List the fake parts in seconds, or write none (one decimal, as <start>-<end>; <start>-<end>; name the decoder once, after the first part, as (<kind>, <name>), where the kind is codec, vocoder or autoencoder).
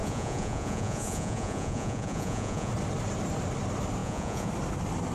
0.0-2.7 (vocoder, Vocos); 4.0-4.5